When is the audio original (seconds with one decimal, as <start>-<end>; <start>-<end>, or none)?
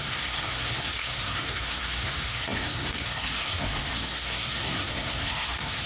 none